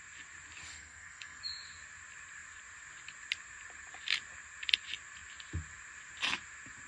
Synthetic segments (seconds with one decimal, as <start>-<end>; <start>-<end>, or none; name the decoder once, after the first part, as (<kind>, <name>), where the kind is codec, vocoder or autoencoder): 0.6-1.4 (codec, SNAC)